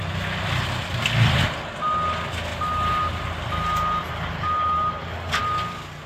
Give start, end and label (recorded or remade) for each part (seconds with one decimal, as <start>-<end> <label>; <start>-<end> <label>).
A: 0.0-6.1 recorded